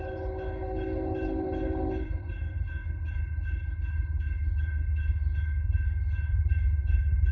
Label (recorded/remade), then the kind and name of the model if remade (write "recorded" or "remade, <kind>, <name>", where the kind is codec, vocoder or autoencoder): remade, codec, HILCodec